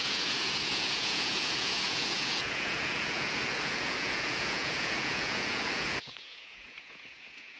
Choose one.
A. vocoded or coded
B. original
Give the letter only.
A